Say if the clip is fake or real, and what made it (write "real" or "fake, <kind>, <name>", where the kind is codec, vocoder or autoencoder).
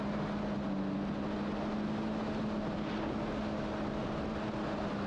real